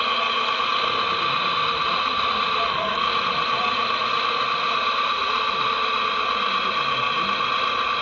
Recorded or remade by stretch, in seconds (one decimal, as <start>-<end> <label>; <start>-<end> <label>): 0.0-8.0 recorded